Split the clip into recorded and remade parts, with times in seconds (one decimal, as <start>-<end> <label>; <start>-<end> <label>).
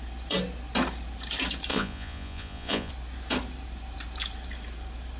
0.0-1.7 recorded; 1.7-2.9 remade; 2.9-5.2 recorded